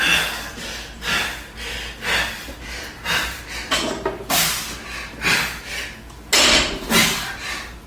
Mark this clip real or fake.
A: real